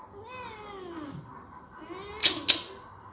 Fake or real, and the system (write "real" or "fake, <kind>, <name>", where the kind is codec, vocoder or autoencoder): real